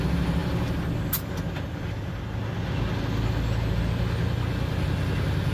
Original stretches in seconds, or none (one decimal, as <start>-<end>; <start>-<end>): 0.0-5.5